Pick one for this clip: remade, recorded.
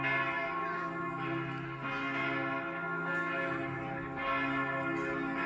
recorded